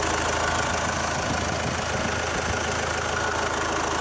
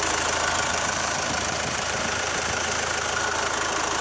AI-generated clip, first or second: second